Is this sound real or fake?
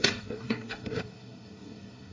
fake